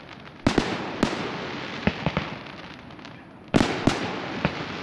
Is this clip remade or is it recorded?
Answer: recorded